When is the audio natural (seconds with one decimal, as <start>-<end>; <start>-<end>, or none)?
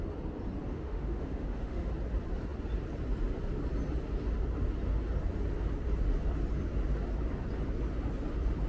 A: 0.0-0.7; 1.9-8.7